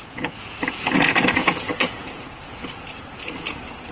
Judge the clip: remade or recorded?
remade